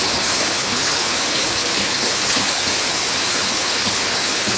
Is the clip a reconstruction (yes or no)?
yes